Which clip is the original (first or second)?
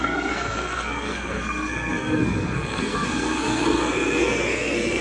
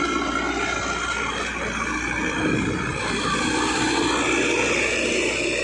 second